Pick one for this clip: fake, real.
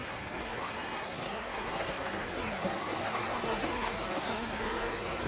fake